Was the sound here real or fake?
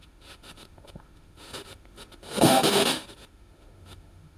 fake